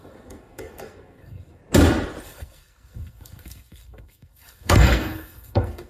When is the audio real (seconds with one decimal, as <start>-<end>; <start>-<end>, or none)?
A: 1.6-2.2